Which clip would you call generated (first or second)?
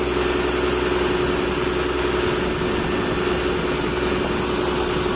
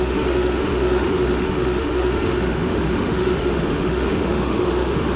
second